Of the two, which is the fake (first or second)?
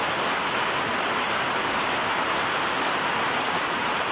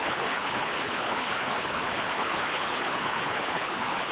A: second